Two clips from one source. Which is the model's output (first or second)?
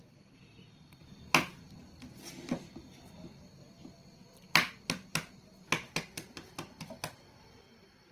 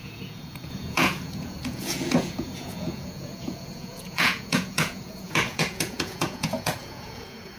second